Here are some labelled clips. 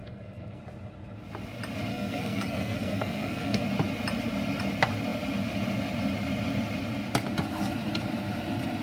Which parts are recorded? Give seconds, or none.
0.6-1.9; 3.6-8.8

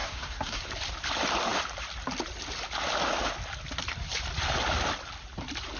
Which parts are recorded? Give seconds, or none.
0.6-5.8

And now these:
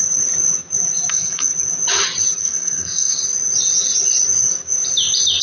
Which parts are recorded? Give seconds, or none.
0.0-1.1; 1.5-2.4; 3.2-5.4